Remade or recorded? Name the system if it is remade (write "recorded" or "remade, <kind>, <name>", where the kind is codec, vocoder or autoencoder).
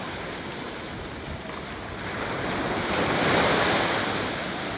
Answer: recorded